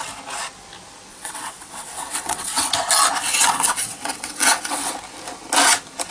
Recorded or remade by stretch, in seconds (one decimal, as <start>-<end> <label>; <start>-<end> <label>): 0.0-1.1 recorded; 1.1-2.7 remade; 2.7-3.2 recorded; 3.2-4.9 remade; 4.9-6.1 recorded